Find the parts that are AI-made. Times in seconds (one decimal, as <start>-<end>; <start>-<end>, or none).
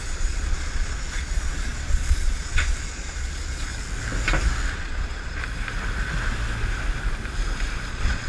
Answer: 0.0-3.7; 4.7-5.4; 7.9-8.3